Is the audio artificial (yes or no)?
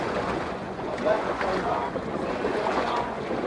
yes